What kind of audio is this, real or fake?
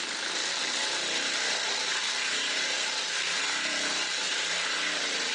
fake